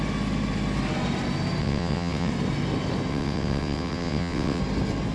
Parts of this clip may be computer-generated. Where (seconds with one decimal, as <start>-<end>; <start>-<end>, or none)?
1.6-2.3; 3.1-4.6